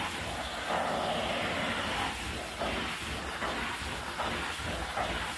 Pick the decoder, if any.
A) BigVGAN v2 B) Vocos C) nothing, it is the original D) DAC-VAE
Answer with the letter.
C